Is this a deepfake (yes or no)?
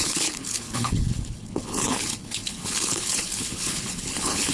yes